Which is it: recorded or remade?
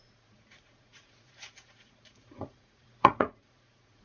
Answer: remade